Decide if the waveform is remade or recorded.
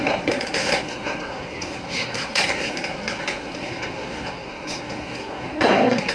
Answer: remade